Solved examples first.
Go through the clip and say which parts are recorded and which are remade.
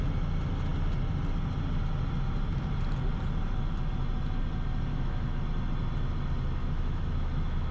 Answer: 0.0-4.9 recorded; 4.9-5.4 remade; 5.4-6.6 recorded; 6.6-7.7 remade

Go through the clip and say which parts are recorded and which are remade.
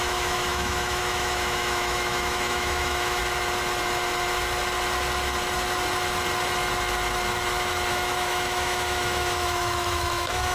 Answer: 0.0-3.2 remade; 3.2-7.9 recorded; 7.9-10.5 remade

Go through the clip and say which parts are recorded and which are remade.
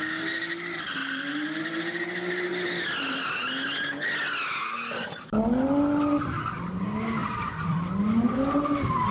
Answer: 0.0-1.0 recorded; 1.0-1.6 remade; 1.6-2.5 recorded; 2.5-3.4 remade; 3.4-7.2 recorded; 7.2-7.9 remade; 7.9-9.1 recorded